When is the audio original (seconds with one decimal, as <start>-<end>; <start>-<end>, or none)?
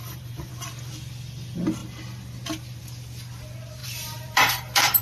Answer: 0.5-3.8